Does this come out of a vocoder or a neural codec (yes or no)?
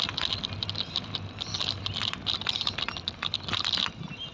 no